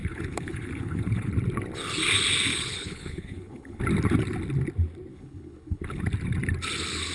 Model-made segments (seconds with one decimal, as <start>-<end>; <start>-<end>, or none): 0.0-1.3; 2.5-3.8; 5.1-6.0

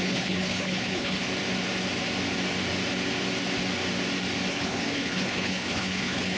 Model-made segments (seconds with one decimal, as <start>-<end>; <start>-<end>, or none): 0.0-1.2; 4.5-6.4

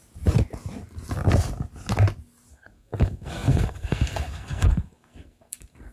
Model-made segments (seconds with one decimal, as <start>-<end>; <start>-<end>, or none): 2.5-5.9

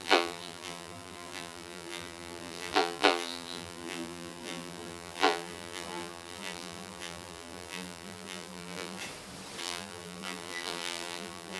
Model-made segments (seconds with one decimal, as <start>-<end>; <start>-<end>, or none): 0.0-9.0; 9.6-11.6